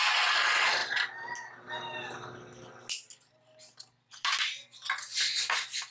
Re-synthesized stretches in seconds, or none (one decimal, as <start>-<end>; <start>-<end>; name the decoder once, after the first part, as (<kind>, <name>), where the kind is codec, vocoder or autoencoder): none